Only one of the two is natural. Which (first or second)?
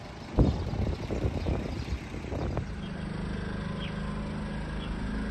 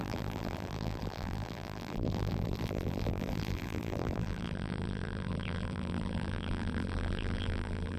first